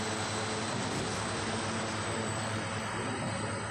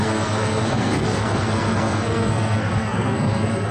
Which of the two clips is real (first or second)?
first